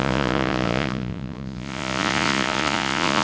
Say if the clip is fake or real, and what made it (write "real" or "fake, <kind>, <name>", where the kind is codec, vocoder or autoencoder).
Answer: fake, vocoder, Vocos